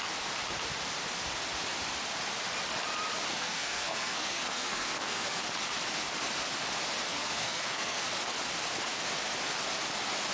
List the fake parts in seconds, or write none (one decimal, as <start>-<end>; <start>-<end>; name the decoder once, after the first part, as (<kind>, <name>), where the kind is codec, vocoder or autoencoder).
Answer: 3.3-5.4 (codec, SNAC); 7.1-8.1